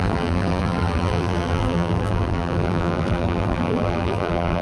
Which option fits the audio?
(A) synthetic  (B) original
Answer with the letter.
A